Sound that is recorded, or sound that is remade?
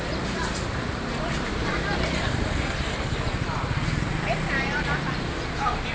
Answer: remade